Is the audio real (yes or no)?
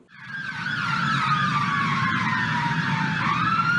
yes